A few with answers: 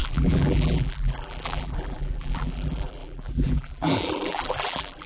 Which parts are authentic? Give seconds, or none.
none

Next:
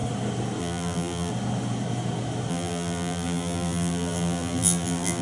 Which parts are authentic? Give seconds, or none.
0.0-0.6; 1.3-2.5

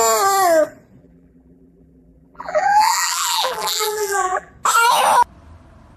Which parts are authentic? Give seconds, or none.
0.0-1.0; 4.5-6.0

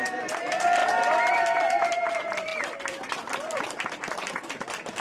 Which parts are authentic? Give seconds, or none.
0.8-1.3

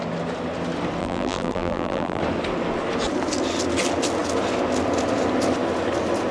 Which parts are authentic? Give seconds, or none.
0.0-1.0; 2.2-6.3